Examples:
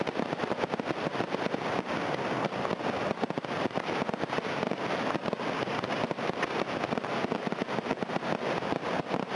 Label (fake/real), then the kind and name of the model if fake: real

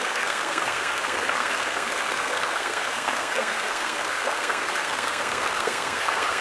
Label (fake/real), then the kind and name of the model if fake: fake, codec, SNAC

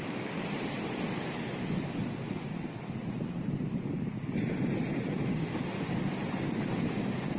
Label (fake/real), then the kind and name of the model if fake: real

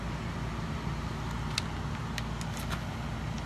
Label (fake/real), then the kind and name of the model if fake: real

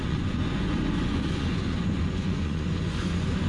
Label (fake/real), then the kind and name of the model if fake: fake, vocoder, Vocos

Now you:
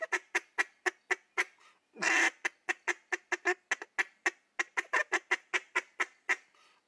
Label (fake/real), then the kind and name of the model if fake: real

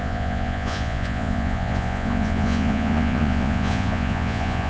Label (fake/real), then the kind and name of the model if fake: fake, vocoder, Vocos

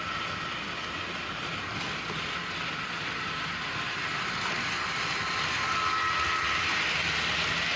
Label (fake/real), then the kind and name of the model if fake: real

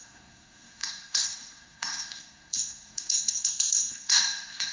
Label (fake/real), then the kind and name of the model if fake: fake, codec, SNAC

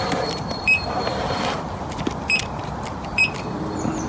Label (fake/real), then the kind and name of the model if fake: fake, vocoder, BigVGAN v2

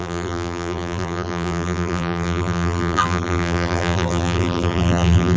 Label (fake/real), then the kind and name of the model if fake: fake, vocoder, BigVGAN v2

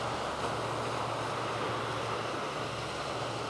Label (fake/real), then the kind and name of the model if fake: real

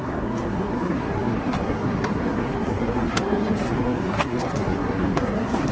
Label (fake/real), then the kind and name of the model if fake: fake, codec, SNAC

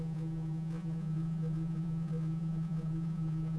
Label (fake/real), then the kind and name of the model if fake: fake, vocoder, Vocos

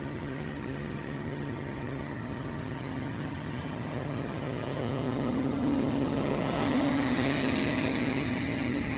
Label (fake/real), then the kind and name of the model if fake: fake, vocoder, HiFi-GAN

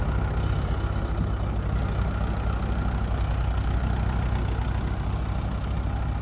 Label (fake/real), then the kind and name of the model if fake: real